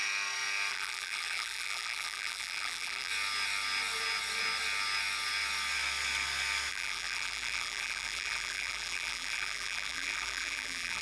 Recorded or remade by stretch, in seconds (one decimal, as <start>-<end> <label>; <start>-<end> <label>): 0.0-0.7 recorded; 0.7-3.1 remade; 3.1-6.7 recorded; 6.7-11.0 remade